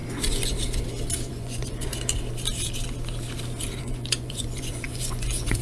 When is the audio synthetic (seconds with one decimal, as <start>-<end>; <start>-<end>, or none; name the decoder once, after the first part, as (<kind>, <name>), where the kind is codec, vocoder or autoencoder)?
1.3-1.9 (vocoder, Vocos); 3.8-5.6